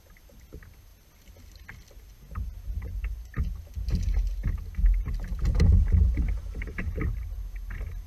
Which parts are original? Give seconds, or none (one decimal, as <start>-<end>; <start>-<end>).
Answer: 0.0-8.1